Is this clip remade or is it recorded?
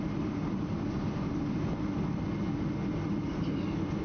recorded